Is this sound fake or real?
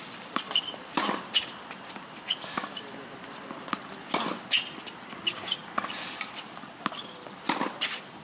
real